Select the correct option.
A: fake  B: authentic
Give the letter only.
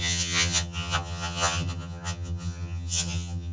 A